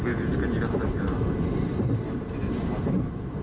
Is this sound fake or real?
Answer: fake